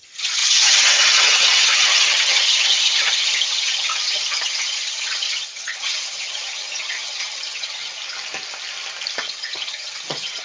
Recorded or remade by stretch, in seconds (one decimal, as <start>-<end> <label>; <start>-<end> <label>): 0.0-8.0 remade; 8.0-9.2 recorded; 9.2-10.4 remade